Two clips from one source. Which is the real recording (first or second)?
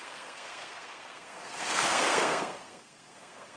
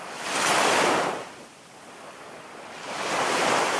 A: second